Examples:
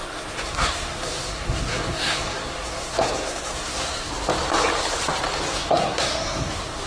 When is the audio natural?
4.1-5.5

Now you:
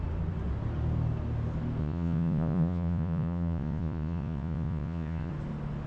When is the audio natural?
0.0-1.8; 5.3-5.9

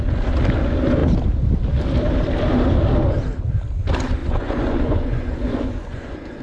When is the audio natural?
0.0-4.2

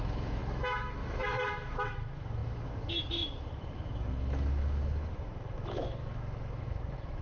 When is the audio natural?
none

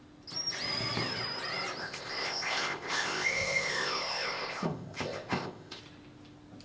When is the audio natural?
0.0-1.8; 5.8-6.6

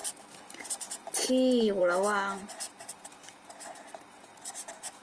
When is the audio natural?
1.3-5.0